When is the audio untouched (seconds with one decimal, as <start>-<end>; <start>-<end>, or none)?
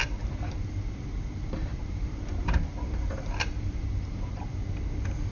1.1-1.7; 4.4-5.3